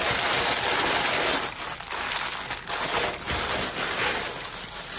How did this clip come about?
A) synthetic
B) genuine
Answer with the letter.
B